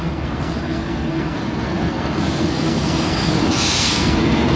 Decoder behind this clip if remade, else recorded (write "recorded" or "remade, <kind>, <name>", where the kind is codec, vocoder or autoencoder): remade, codec, SNAC